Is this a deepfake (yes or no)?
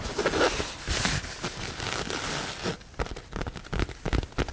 no